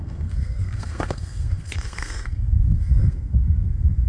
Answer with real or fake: fake